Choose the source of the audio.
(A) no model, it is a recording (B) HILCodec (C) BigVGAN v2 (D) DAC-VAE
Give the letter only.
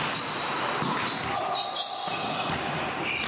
A